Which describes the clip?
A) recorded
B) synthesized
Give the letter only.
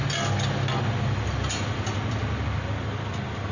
A